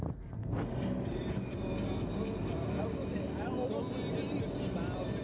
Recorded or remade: recorded